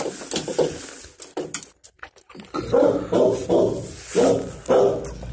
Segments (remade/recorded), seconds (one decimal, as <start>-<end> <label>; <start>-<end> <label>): 0.0-5.3 recorded